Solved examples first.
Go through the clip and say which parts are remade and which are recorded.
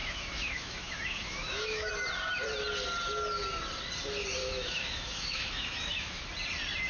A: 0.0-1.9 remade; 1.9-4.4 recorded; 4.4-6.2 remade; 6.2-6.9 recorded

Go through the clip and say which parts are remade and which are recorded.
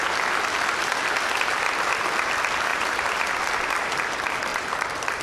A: 0.0-2.7 recorded; 2.7-3.2 remade; 3.2-4.5 recorded; 4.5-5.2 remade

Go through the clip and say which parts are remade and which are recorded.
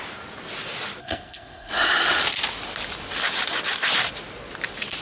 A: 0.0-1.0 recorded; 1.0-1.7 remade; 1.7-5.0 recorded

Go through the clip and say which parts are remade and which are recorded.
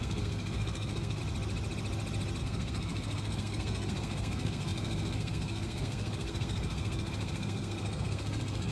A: 0.0-1.2 remade; 1.2-2.4 recorded; 2.4-8.7 remade